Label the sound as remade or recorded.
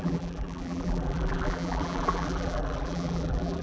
remade